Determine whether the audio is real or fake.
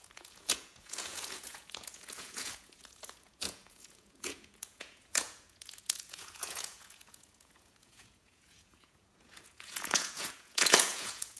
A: fake